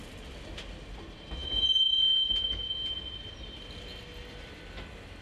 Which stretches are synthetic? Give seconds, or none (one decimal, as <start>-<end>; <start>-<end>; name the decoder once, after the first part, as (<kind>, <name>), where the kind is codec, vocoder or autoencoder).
none